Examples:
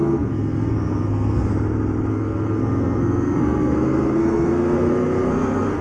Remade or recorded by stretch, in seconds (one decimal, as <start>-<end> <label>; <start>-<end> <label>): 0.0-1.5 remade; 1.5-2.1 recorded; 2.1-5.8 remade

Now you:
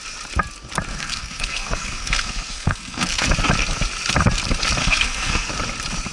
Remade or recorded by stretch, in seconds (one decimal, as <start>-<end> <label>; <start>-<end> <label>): 0.0-0.9 recorded; 0.9-3.3 remade; 3.3-4.8 recorded; 4.8-5.5 remade; 5.5-6.1 recorded

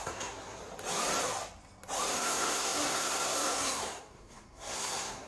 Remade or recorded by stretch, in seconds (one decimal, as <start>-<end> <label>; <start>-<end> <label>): 0.0-0.6 remade; 0.6-2.1 recorded; 2.1-5.3 remade